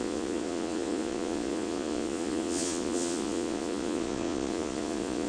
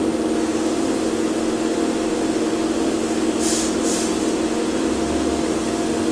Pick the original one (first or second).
second